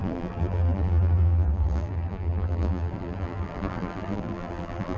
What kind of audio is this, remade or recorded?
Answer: remade